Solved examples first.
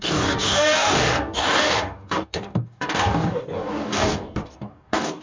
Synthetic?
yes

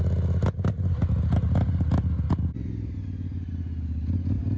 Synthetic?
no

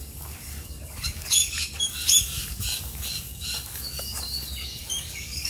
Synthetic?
yes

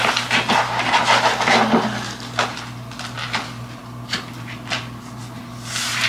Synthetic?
no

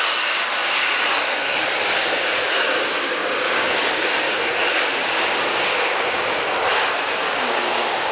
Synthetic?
yes